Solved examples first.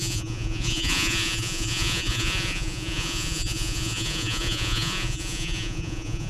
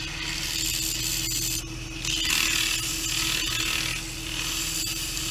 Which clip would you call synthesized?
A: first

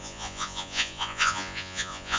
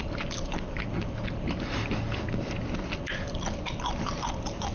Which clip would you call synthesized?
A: first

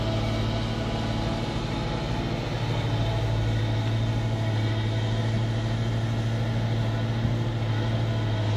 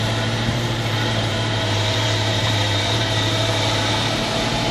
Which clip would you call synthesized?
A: second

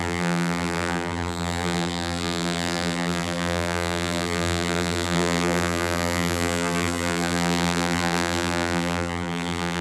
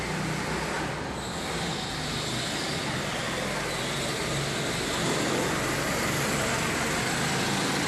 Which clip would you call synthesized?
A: first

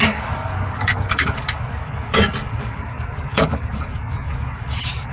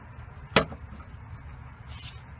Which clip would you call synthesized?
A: first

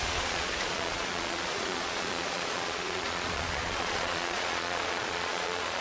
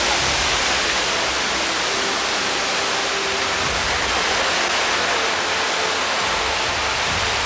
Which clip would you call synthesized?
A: first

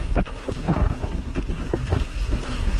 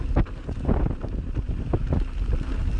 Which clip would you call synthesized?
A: first